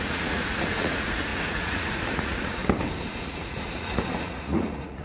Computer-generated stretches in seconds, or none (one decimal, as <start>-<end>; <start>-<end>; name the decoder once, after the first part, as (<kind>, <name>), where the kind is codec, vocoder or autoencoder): 0.0-2.6 (vocoder, Vocos); 3.2-5.0